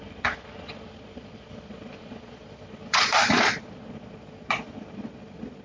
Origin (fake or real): fake